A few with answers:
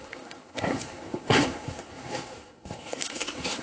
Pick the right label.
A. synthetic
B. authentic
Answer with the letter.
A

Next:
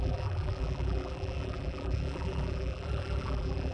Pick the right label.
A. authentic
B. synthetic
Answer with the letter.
B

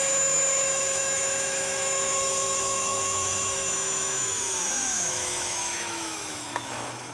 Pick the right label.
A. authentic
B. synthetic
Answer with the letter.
B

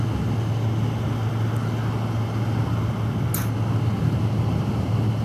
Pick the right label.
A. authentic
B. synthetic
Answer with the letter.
A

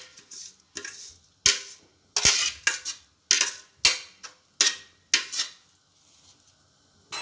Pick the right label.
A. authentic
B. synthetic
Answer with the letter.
A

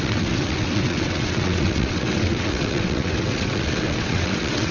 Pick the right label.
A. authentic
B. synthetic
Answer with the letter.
B